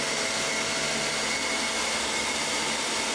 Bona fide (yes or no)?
yes